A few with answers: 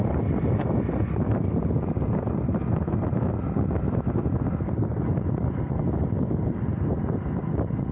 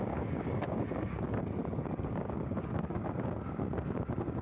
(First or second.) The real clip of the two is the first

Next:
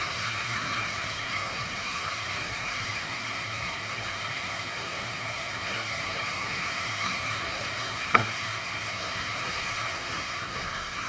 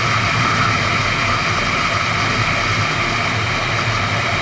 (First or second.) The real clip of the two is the second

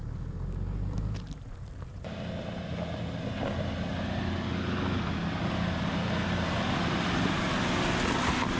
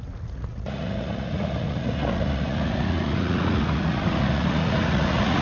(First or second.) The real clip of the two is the first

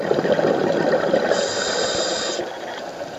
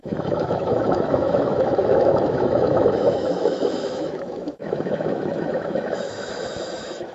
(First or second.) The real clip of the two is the first